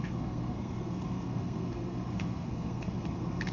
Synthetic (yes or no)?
yes